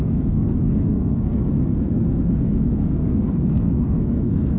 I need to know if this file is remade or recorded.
remade